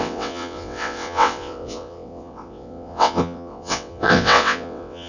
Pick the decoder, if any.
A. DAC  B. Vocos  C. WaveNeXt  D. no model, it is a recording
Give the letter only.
C